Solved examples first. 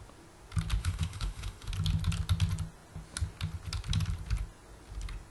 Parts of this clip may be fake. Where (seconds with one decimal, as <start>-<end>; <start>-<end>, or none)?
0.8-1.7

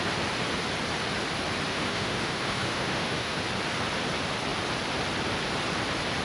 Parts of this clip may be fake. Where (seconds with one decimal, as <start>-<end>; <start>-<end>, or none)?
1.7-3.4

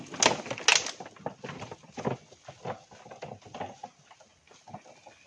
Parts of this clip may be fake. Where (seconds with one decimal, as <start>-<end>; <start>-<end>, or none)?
none